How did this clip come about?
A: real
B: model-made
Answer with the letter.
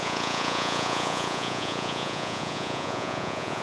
B